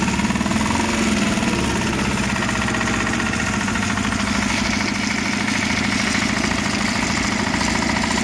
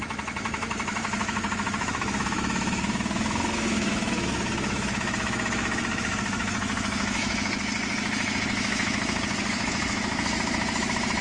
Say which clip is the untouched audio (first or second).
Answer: first